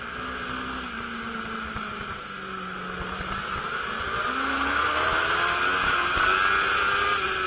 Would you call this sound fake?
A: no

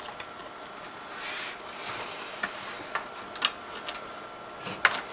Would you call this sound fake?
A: no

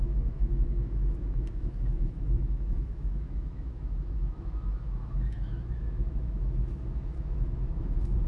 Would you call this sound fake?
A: yes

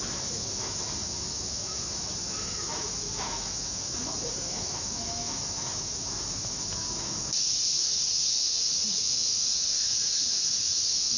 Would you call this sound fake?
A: yes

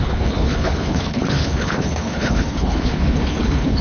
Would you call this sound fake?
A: yes